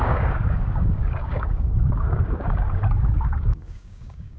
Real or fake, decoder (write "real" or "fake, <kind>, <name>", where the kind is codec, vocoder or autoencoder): fake, codec, DAC